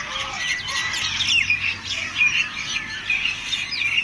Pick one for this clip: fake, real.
real